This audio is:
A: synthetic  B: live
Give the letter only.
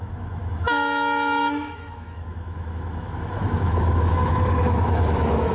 A